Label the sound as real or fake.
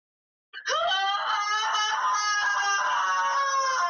real